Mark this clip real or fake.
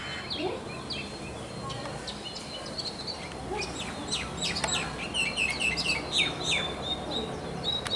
real